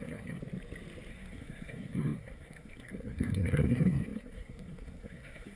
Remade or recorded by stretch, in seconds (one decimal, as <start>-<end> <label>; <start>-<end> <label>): 0.0-0.4 remade; 0.4-1.1 recorded; 1.1-5.6 remade